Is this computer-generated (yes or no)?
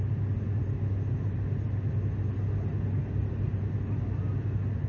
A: no